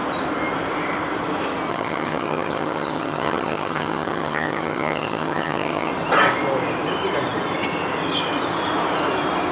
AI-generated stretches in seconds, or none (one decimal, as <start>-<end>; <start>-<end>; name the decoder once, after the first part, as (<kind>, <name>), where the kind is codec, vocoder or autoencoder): 1.7-5.9 (vocoder, HiFi-GAN)